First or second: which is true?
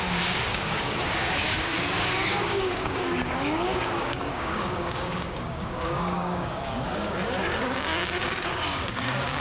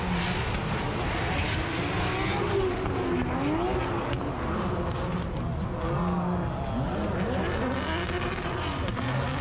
second